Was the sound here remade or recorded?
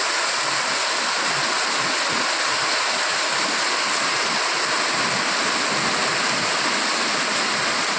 recorded